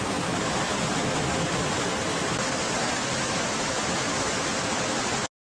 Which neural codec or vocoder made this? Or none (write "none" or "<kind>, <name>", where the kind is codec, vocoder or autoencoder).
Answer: none